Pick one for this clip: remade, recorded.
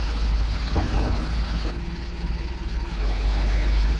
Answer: remade